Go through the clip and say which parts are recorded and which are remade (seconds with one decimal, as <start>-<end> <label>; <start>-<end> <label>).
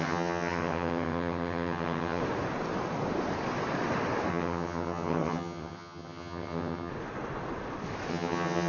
0.0-2.2 remade; 2.2-4.3 recorded; 4.3-6.9 remade; 6.9-8.1 recorded; 8.1-8.7 remade